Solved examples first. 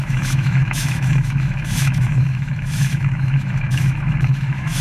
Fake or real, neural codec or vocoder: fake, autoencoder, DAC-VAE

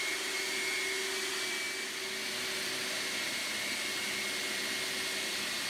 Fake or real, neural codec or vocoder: real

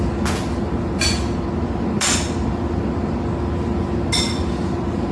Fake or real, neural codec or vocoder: real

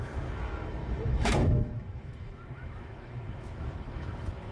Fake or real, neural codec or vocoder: fake, autoencoder, DAC-VAE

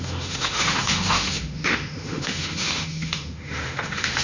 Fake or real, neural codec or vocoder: fake, autoencoder, DAC-VAE